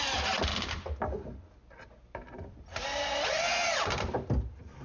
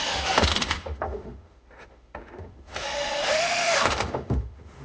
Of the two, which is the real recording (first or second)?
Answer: first